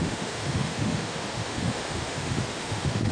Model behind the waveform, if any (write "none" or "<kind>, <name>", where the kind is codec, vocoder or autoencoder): autoencoder, DAC-VAE